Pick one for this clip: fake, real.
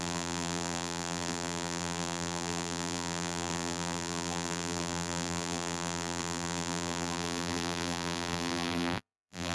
fake